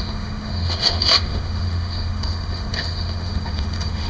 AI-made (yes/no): yes